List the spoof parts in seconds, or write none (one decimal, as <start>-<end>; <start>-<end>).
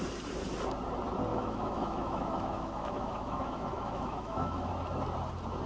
1.3-4.7